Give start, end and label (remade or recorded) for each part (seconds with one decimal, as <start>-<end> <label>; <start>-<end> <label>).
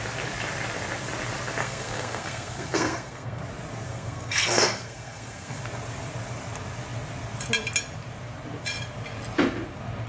0.0-1.6 recorded; 1.6-3.4 remade; 3.4-3.9 recorded; 3.9-5.6 remade; 5.6-10.1 recorded